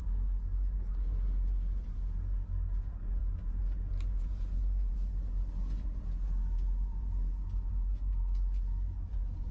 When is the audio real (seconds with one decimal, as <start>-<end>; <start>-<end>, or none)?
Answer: 0.0-9.5